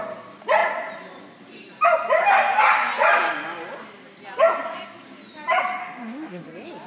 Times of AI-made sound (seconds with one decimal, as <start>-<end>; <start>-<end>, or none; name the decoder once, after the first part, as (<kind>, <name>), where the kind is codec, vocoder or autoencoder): 5.8-6.4 (autoencoder, DAC-VAE)